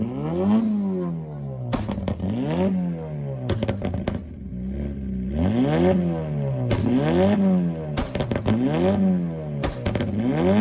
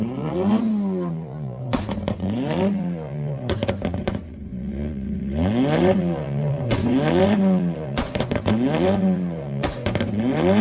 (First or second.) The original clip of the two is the first